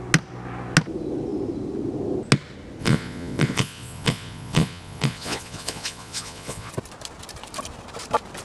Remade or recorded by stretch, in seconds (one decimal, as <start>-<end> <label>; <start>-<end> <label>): 0.0-2.8 recorded; 2.8-6.7 remade; 6.7-8.4 recorded